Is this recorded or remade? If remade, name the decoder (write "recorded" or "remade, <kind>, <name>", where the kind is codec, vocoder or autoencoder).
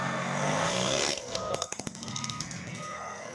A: remade, codec, SNAC